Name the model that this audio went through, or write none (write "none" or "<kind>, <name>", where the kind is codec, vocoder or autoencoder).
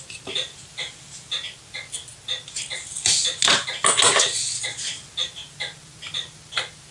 none